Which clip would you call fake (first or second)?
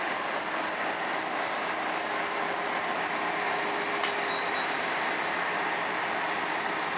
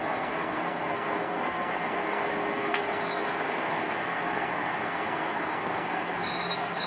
second